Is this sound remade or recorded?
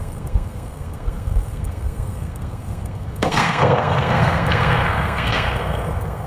remade